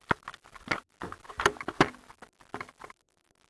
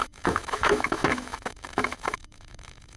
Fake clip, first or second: second